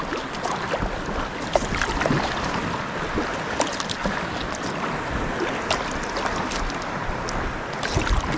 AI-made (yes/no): no